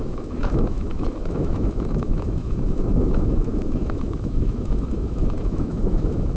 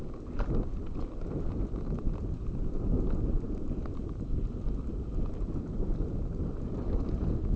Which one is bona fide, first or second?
second